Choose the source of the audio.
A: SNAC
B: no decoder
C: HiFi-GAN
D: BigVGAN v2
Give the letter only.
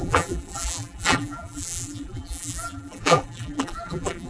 D